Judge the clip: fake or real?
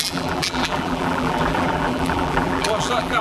fake